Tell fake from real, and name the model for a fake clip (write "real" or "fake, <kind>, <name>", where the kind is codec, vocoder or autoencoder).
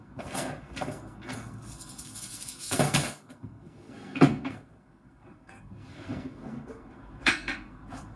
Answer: fake, codec, SNAC